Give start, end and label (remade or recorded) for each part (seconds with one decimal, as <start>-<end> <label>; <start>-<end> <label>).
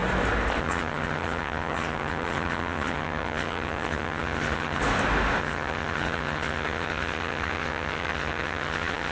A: 0.0-0.6 recorded; 0.6-4.8 remade; 4.8-5.4 recorded; 5.4-9.1 remade